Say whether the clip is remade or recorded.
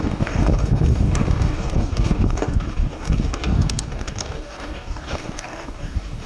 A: remade